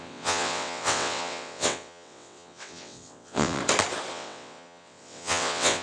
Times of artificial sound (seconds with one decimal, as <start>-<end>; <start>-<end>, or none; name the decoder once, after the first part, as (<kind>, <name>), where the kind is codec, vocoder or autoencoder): 0.0-3.6 (vocoder, WaveNeXt); 4.1-5.8